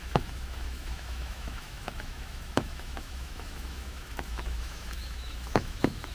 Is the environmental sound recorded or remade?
remade